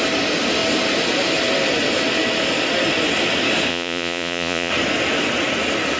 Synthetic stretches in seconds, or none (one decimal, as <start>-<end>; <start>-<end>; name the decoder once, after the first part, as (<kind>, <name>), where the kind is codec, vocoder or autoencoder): 3.7-4.7 (vocoder, Vocos)